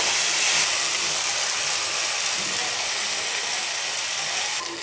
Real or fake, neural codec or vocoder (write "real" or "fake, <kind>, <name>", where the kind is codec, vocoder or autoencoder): real